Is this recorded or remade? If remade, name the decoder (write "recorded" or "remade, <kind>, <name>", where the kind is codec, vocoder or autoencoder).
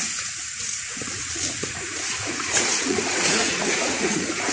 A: remade, vocoder, Vocos